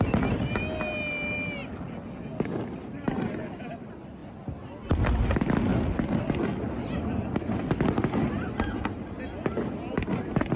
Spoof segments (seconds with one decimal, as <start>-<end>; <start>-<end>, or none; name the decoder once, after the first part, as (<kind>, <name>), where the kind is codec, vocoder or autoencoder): none